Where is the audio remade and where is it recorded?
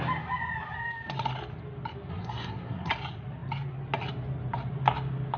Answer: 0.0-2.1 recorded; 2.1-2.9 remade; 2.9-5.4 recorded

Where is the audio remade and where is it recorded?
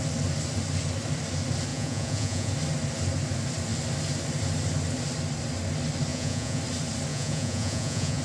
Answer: 0.0-1.7 recorded; 1.7-2.5 remade; 2.5-6.1 recorded; 6.1-6.6 remade; 6.6-7.1 recorded; 7.1-8.2 remade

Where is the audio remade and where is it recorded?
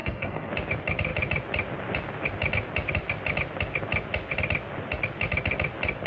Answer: 0.0-0.5 remade; 0.5-6.1 recorded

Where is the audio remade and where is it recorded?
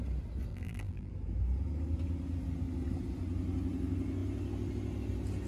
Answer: 0.0-0.5 recorded; 0.5-1.1 remade; 1.1-5.5 recorded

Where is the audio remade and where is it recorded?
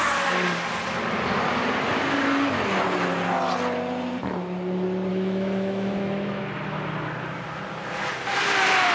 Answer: 0.0-5.1 recorded; 5.1-6.4 remade; 6.4-8.9 recorded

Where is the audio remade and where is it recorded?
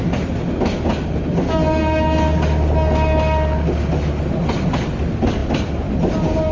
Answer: 0.0-6.5 recorded